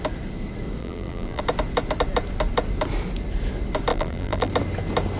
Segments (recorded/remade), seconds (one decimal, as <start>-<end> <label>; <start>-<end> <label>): 0.0-0.8 recorded; 0.8-1.4 remade; 1.4-3.9 recorded; 3.9-4.5 remade; 4.5-5.2 recorded